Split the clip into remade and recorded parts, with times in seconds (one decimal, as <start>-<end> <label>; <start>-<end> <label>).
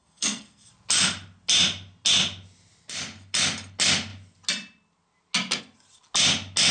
0.0-0.7 remade; 0.7-6.7 recorded